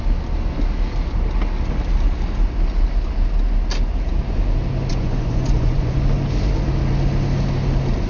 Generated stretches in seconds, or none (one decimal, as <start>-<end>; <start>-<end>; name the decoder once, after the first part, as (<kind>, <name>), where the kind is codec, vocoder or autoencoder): 4.9-6.0 (vocoder, Vocos)